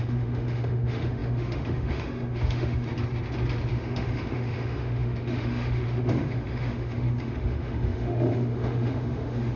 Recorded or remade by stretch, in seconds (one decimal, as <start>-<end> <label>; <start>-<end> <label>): 0.0-2.9 remade; 2.9-3.7 recorded; 3.7-9.6 remade